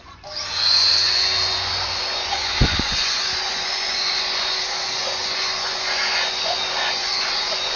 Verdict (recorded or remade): remade